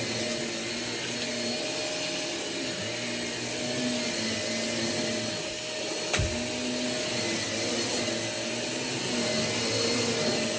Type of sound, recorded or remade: recorded